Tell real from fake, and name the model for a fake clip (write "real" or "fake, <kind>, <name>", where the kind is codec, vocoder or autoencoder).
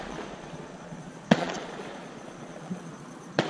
fake, vocoder, Vocos